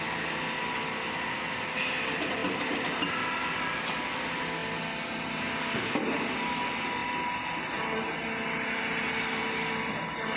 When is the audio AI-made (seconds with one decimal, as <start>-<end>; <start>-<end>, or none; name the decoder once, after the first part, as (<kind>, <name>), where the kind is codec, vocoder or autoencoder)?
none